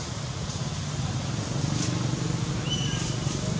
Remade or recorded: recorded